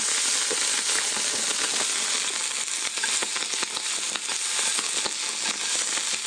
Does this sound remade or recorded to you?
recorded